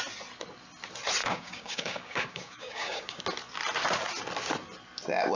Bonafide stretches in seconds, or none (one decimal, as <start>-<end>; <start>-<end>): 0.0-1.2; 3.2-5.3